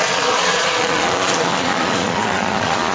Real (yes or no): no